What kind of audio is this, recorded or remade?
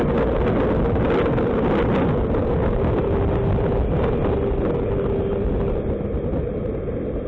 recorded